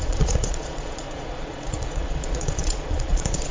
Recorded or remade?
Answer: remade